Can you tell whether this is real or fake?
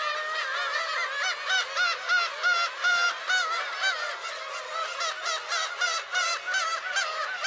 real